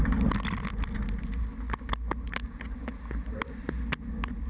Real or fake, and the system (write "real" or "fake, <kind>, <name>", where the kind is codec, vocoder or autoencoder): real